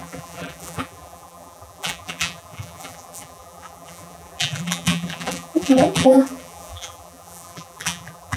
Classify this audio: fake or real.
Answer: fake